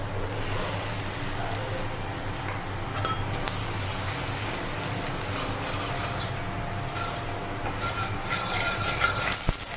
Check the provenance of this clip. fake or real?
real